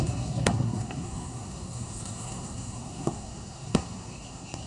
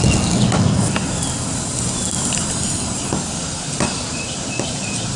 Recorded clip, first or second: second